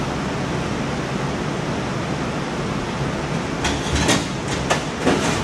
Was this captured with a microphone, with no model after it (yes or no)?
yes